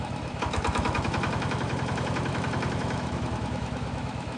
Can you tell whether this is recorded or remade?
remade